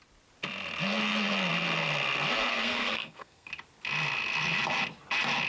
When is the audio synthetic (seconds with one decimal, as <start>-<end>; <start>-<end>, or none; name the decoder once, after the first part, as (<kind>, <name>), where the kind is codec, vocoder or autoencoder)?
2.5-3.5 (codec, SNAC)